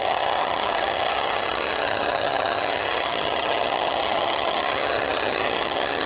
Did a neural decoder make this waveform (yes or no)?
yes